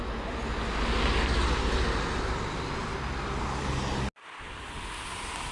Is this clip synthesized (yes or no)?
no